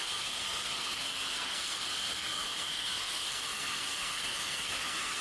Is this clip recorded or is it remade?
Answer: remade